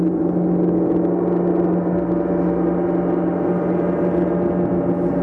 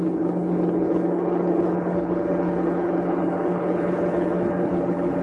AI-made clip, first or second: second